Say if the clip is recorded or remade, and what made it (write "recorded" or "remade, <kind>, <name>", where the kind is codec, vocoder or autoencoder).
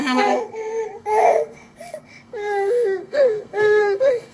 remade, codec, SNAC